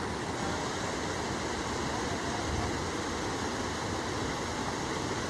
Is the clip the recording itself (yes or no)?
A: yes